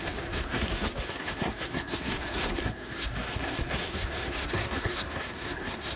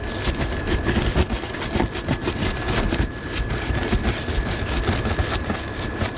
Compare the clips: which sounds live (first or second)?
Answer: second